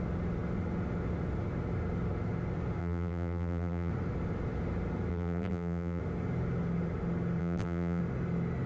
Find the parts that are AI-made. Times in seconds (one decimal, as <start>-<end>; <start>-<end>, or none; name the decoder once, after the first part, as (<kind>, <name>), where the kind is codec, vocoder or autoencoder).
2.8-3.9 (vocoder, BigVGAN v2); 5.1-6.0; 7.4-8.0